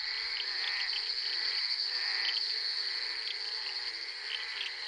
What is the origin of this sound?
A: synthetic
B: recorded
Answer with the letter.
B